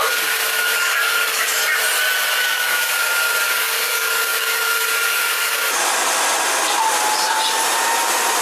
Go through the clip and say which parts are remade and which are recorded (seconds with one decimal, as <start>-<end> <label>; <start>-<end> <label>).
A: 0.0-1.7 remade; 1.7-2.4 recorded; 2.4-5.8 remade; 5.8-8.4 recorded